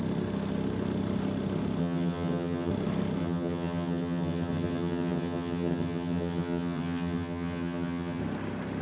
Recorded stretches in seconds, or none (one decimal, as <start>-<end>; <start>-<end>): 0.0-1.8; 2.7-3.2; 8.2-8.8